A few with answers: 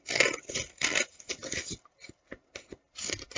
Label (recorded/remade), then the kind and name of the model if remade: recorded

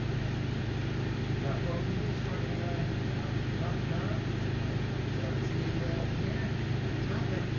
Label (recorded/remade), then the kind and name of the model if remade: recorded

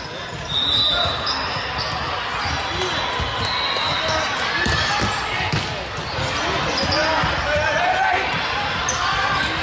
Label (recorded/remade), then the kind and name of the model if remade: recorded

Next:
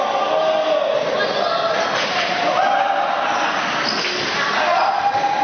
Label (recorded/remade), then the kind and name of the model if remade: recorded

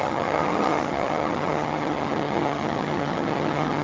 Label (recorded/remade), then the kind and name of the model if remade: remade, vocoder, HiFi-GAN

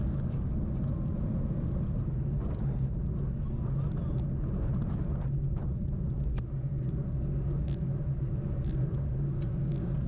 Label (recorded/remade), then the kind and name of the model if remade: recorded